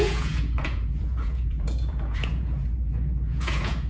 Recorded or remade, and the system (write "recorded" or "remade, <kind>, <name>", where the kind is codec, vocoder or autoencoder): remade, vocoder, Vocos